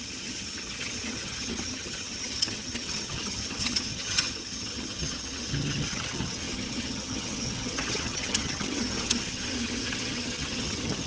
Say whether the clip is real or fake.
fake